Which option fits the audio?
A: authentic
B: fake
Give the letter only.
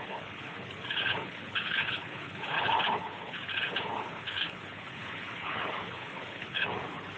B